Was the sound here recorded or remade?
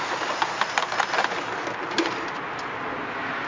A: recorded